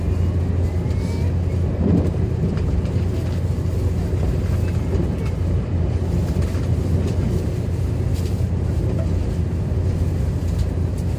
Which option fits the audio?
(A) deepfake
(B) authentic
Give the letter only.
B